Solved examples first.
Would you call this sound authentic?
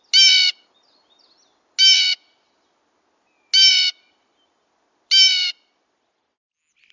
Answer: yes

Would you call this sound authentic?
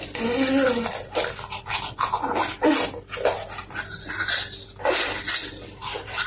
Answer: yes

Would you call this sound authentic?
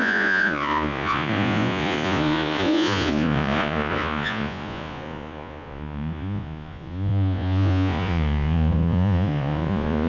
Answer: no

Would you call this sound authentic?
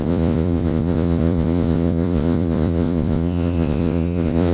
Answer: no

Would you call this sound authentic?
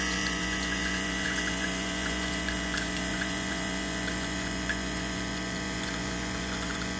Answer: no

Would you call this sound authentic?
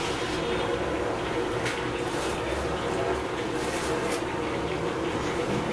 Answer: yes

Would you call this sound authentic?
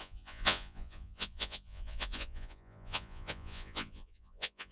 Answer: no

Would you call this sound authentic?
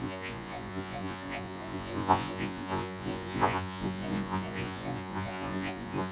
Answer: no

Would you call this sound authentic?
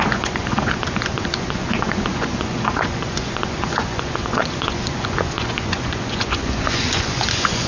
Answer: no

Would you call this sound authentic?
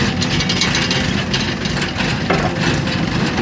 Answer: yes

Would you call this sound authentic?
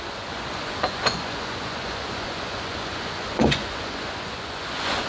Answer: no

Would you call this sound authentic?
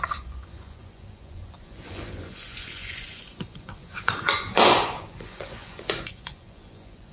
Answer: no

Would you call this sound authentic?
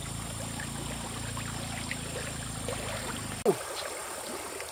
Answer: yes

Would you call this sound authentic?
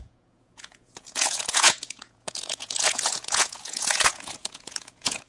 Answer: no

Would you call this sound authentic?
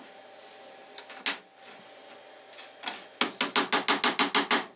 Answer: yes